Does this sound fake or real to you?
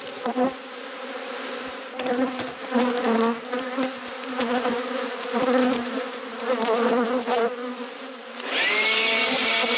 fake